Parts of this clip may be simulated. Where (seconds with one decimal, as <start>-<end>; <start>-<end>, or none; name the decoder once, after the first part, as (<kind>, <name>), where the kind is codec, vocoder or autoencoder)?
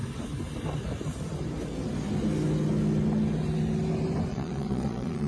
4.3-5.3 (vocoder, Vocos)